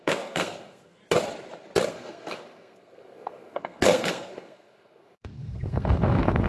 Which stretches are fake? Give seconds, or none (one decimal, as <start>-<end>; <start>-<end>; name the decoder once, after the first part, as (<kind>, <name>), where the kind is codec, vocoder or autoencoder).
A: 0.0-1.0 (codec, SNAC); 1.9-6.5